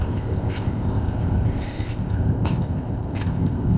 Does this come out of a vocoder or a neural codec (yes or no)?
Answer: yes